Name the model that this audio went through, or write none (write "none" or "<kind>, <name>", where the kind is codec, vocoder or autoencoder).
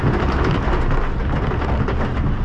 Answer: none